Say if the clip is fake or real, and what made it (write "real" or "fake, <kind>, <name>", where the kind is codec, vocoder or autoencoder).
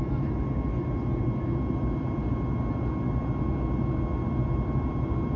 real